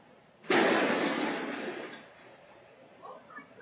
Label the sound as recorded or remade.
remade